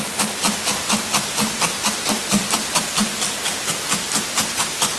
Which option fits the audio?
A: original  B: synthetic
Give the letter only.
A